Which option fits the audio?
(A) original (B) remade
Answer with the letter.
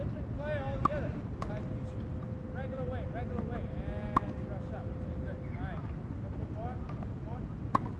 A